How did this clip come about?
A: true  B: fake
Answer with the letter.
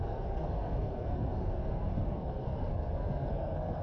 B